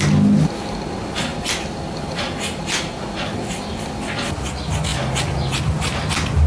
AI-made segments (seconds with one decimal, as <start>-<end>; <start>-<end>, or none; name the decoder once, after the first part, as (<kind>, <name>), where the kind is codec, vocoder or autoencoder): none